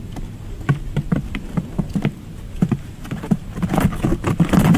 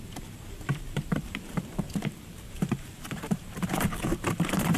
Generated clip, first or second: second